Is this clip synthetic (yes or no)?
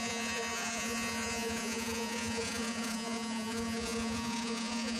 yes